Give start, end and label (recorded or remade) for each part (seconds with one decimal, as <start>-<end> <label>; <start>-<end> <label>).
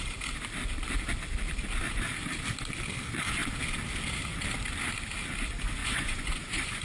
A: 0.0-5.8 recorded; 5.8-6.8 remade